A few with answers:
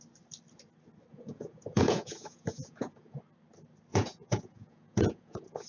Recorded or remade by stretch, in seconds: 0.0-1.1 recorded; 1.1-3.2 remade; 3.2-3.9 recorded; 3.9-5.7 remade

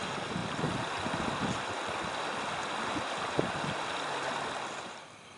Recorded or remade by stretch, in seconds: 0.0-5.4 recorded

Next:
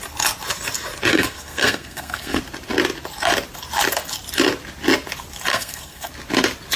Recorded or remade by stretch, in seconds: 0.0-1.1 recorded; 1.1-2.4 remade; 2.4-5.5 recorded; 5.5-6.1 remade; 6.1-6.8 recorded

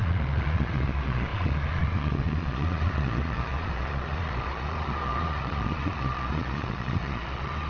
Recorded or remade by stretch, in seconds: 0.0-7.7 remade

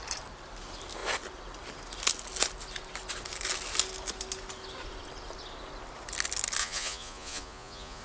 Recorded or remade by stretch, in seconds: 0.0-6.6 recorded; 6.6-8.0 remade